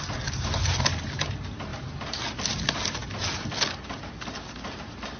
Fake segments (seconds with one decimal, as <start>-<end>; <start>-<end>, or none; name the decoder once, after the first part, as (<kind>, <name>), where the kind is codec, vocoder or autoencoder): none